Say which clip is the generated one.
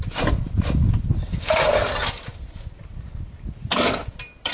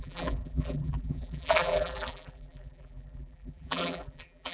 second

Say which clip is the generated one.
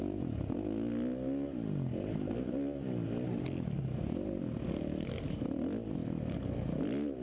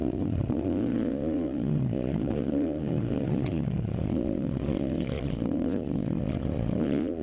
second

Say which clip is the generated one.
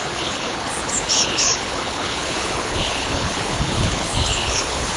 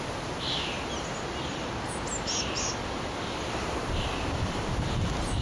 first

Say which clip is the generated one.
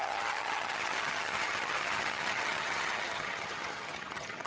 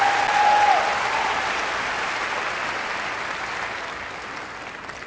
first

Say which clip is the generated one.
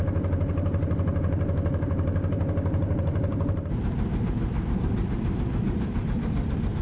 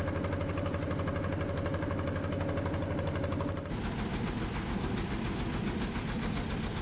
first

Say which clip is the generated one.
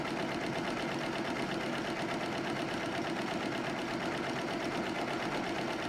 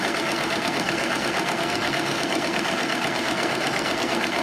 second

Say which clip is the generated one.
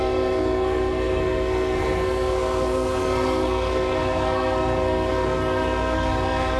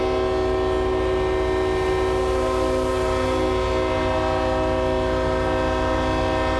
first